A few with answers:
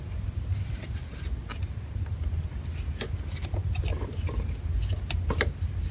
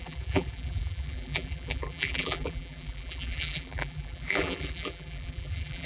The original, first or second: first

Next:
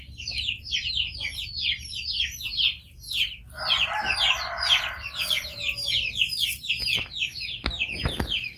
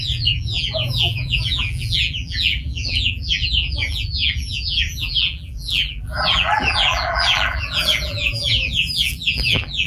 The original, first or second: first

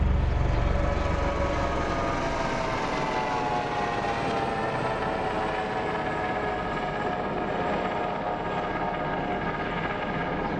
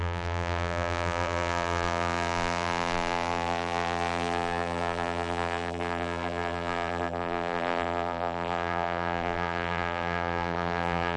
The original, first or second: first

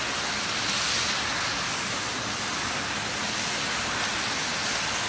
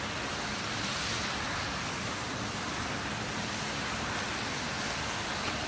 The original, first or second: first